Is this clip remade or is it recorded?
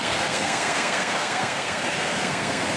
remade